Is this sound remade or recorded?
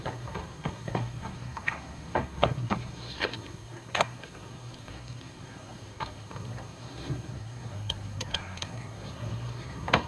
remade